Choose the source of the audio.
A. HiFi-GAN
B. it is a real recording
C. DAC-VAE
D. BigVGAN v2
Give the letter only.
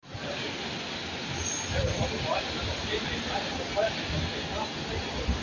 B